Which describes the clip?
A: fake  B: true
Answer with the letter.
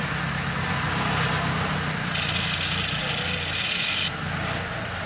B